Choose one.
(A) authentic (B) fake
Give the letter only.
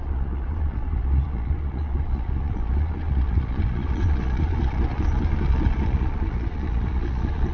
B